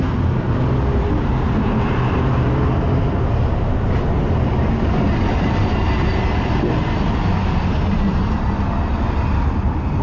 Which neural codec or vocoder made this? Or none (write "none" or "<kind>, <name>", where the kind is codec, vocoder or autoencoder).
none